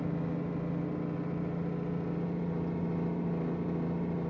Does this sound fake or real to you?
real